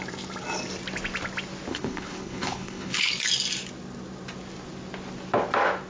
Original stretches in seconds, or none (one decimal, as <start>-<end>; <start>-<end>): 0.0-1.7; 3.1-5.9